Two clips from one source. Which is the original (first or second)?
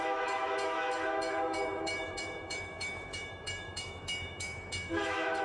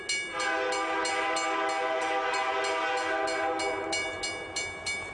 second